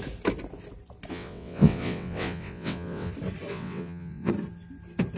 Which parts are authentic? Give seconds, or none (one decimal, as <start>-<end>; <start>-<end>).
0.0-1.1; 3.1-3.5; 4.3-5.2